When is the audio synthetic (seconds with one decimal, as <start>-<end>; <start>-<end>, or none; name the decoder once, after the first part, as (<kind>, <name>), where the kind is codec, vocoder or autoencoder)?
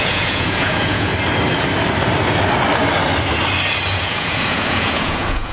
0.0-1.1 (vocoder, Vocos); 3.9-5.5